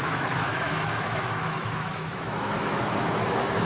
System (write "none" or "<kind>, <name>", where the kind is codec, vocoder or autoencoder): autoencoder, DAC-VAE